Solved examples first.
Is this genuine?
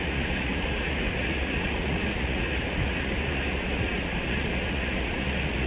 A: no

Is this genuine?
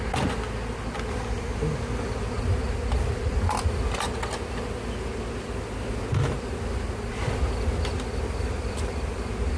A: yes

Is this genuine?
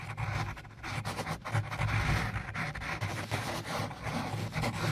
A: yes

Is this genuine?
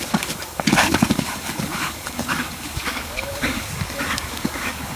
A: no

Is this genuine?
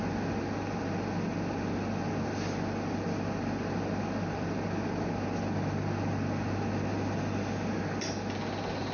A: yes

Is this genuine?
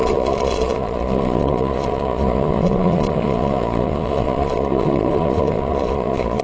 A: no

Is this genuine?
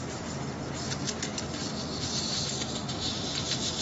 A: yes